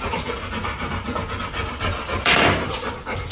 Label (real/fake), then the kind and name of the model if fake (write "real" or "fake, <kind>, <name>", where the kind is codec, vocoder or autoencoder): real